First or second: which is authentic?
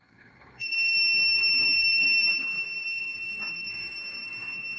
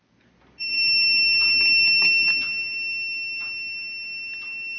second